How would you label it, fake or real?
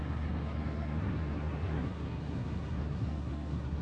fake